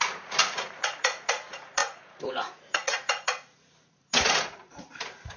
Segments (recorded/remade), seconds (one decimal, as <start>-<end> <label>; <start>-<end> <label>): 0.0-5.4 remade